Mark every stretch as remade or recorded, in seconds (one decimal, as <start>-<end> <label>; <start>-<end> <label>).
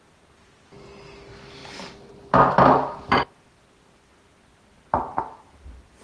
0.0-6.0 recorded